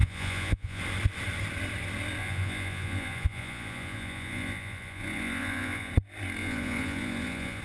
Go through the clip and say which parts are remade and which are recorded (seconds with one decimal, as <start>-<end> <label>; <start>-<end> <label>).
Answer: 0.0-0.8 remade; 0.8-2.2 recorded; 2.2-5.9 remade; 5.9-6.4 recorded; 6.4-7.6 remade